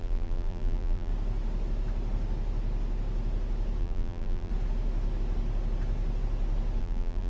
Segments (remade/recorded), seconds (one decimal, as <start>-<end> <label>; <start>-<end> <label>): 0.0-1.1 remade; 1.1-3.8 recorded; 3.8-4.5 remade; 4.5-6.8 recorded; 6.8-7.3 remade